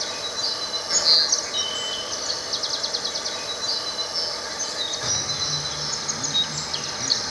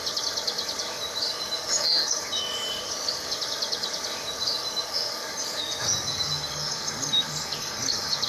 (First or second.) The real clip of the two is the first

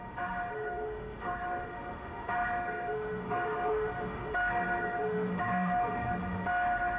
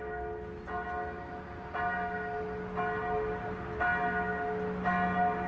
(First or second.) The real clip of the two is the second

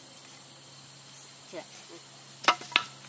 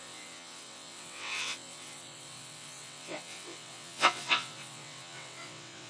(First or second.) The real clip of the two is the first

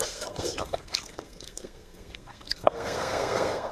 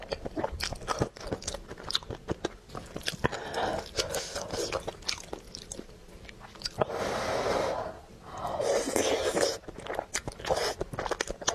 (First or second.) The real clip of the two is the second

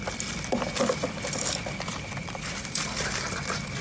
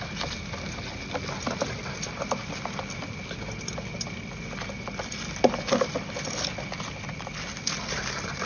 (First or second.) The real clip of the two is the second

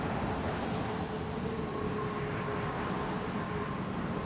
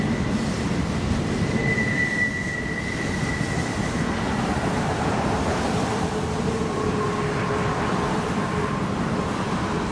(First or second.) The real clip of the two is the first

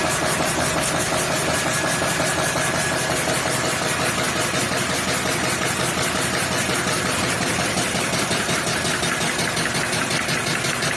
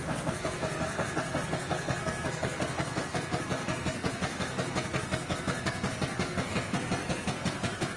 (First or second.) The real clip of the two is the first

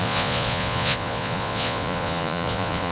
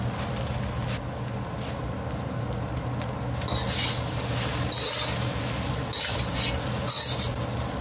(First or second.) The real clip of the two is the second